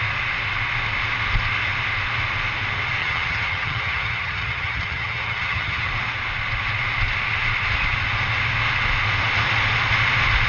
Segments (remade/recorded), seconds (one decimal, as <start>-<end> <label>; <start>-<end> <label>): 0.0-3.0 recorded; 3.0-5.9 remade; 5.9-10.5 recorded